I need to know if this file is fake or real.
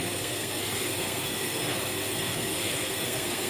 fake